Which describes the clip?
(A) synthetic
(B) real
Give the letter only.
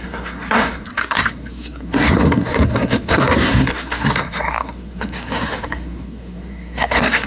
A